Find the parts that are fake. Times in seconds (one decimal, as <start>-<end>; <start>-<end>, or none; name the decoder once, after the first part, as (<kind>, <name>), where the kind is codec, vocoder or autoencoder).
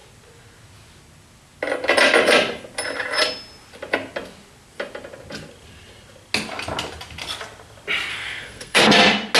8.1-8.8 (codec, SNAC)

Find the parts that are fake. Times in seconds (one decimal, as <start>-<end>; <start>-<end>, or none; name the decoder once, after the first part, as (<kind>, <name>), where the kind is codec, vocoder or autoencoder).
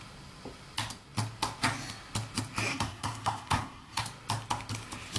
2.7-4.0 (codec, SNAC)